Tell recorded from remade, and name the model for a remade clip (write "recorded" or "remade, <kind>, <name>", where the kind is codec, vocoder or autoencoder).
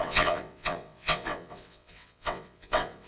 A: remade, vocoder, WaveNeXt